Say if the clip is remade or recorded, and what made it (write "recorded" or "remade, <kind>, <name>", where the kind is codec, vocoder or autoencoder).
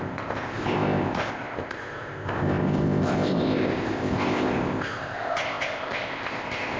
remade, codec, ZipCodec